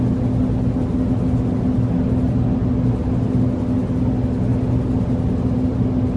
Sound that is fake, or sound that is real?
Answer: real